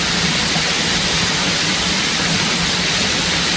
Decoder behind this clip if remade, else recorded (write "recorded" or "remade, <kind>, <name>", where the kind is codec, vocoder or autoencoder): recorded